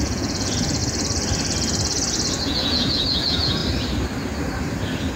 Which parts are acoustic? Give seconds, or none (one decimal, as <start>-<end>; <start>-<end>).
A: 0.8-2.5; 3.6-5.2